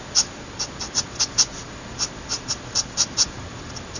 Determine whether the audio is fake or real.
real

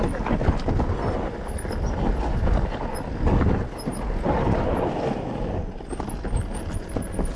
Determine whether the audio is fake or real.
real